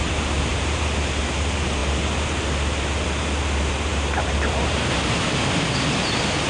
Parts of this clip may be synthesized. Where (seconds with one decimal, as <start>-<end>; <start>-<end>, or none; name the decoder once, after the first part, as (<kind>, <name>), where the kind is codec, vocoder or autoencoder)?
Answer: 0.5-1.2 (vocoder, BigVGAN v2); 3.9-5.3